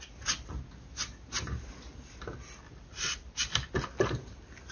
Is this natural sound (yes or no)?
yes